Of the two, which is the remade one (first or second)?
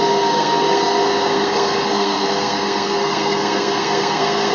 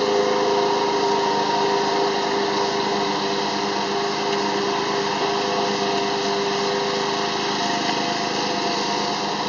first